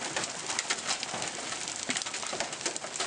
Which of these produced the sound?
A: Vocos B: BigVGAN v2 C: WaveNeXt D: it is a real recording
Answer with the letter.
B